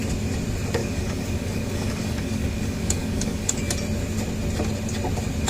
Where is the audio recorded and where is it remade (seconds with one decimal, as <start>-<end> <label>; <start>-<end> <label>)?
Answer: 0.0-0.8 recorded; 0.8-3.6 remade; 3.6-5.5 recorded